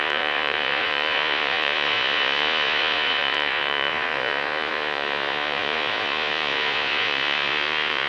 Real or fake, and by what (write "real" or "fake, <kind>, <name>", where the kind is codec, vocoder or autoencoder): fake, vocoder, Vocos